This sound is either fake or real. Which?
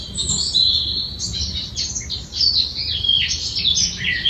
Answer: real